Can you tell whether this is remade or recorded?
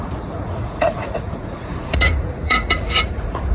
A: remade